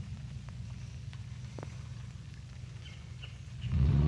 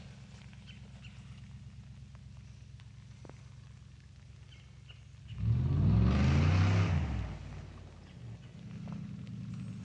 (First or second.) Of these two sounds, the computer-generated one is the first